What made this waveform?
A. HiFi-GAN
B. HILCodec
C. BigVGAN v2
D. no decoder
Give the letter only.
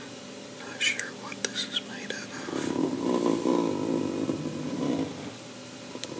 D